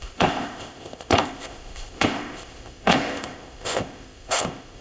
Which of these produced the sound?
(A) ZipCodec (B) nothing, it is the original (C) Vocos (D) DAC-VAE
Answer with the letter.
A